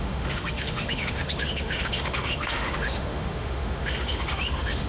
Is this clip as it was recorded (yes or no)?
no